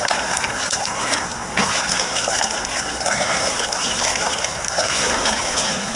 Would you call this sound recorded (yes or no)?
no